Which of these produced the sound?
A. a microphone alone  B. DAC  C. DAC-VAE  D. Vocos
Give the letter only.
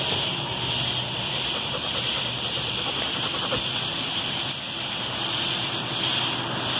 A